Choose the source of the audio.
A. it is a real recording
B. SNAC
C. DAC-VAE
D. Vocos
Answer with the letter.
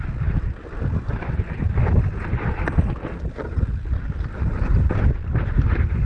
A